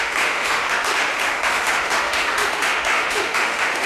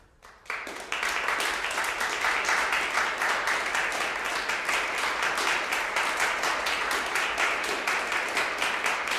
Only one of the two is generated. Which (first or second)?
first